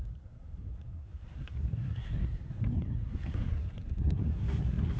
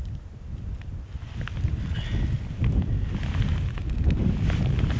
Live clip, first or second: second